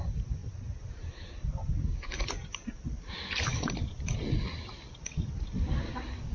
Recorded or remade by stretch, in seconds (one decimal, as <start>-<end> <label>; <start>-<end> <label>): 0.0-6.3 recorded